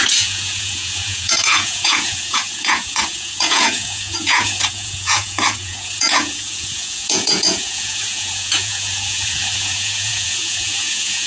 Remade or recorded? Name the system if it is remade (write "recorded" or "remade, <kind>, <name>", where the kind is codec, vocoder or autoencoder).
remade, vocoder, Vocos